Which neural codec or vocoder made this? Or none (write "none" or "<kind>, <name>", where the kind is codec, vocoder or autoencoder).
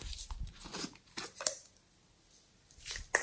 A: none